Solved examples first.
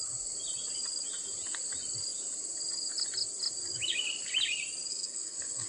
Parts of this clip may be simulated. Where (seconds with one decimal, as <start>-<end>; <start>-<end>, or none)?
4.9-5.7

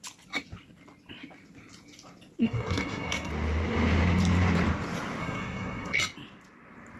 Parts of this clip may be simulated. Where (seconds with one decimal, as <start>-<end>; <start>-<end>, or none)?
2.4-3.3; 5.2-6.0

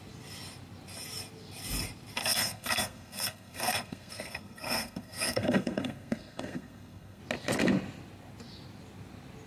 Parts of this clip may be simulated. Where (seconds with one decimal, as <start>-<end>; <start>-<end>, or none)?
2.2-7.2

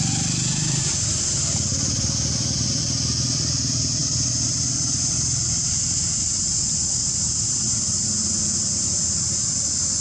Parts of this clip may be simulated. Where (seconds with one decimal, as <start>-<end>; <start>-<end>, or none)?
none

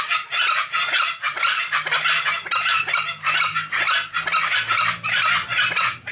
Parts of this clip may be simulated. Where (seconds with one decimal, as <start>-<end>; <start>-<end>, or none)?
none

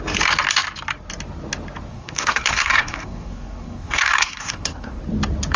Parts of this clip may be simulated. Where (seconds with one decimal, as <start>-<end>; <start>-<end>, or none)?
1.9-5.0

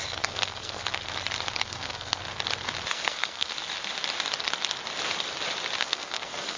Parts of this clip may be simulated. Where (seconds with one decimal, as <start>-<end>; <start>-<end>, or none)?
0.0-0.8; 1.6-2.2; 2.9-3.5; 5.8-6.6

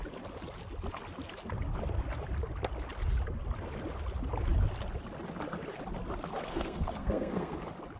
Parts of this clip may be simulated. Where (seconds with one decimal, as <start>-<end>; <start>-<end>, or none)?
6.5-7.6